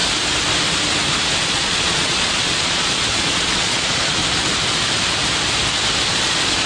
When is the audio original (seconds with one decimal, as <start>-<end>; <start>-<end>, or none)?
0.0-1.5; 4.2-6.1